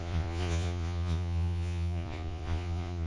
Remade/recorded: remade